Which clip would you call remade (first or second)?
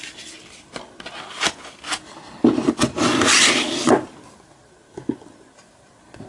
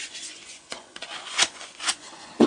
second